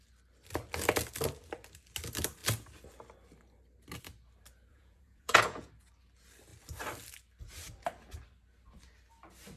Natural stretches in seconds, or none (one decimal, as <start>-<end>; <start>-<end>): 0.0-4.7; 5.7-9.6